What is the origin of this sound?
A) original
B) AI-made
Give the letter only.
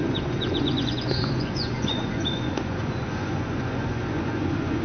B